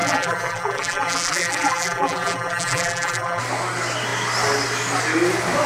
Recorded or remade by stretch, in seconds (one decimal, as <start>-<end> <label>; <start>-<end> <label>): 0.0-3.4 remade; 3.4-5.7 recorded